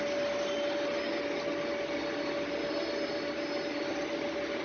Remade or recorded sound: recorded